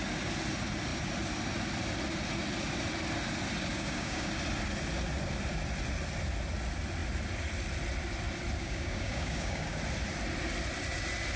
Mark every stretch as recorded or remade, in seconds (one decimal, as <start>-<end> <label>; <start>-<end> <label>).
0.0-3.7 recorded; 3.7-4.3 remade; 4.3-8.6 recorded; 8.6-9.8 remade; 9.8-11.4 recorded